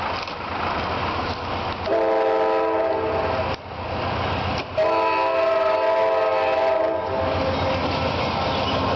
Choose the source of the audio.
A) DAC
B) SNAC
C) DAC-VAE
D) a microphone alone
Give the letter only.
D